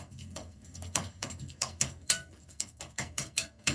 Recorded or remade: remade